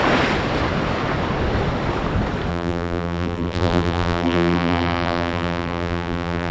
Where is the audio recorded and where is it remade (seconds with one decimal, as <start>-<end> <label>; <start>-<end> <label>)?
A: 0.0-2.5 recorded; 2.5-6.5 remade